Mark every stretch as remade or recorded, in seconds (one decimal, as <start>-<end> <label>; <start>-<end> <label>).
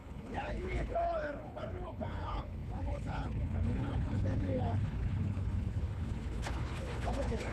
0.0-7.5 remade